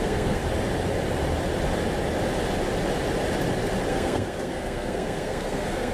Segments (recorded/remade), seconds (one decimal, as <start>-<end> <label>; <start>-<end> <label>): 0.0-0.4 remade; 0.4-3.9 recorded; 3.9-5.9 remade